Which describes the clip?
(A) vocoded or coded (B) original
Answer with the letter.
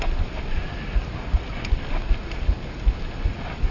B